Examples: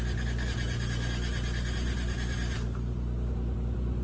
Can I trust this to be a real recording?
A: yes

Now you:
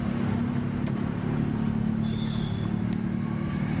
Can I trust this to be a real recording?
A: yes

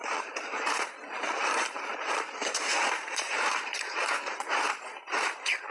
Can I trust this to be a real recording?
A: no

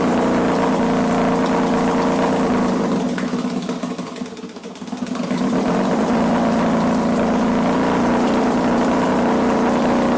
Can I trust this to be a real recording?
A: yes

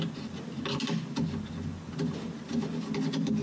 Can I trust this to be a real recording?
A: yes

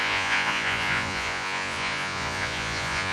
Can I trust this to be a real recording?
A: no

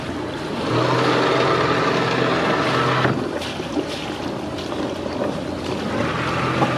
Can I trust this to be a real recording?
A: yes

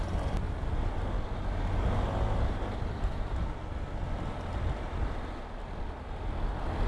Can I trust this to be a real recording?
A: yes